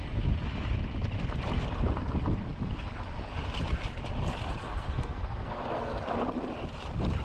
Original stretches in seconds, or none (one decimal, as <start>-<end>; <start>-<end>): 0.0-4.6; 6.0-7.2